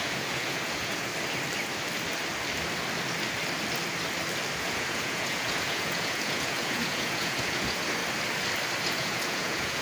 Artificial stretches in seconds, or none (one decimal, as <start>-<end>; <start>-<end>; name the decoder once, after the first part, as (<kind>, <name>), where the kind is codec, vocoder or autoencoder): 0.0-1.1 (vocoder, Vocos); 4.6-8.0; 8.8-9.8